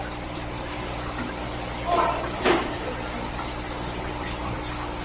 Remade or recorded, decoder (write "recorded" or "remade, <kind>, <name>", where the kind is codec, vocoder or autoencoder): remade, vocoder, BigVGAN v2